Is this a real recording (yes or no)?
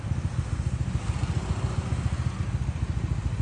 yes